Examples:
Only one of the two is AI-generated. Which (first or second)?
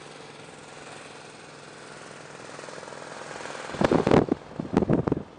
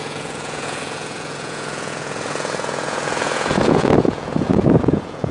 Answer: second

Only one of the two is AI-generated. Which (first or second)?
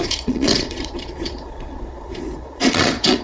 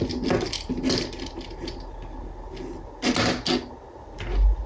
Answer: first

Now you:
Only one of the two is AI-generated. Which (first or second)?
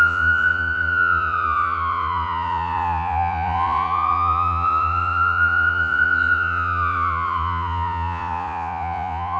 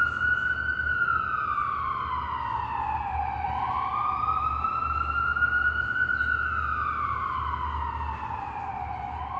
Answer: first